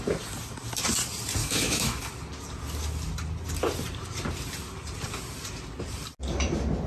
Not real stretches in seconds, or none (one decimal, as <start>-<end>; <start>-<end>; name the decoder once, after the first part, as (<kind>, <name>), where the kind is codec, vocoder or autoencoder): 1.4-2.0 (autoencoder, DAC-VAE)